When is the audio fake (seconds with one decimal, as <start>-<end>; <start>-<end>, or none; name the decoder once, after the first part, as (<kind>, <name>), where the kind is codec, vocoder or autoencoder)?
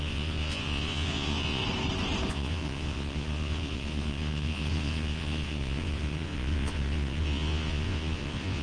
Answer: 0.0-1.6 (vocoder, Vocos); 2.3-8.6